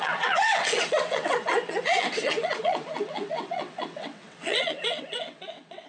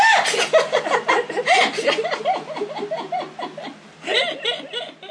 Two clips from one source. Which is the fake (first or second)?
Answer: first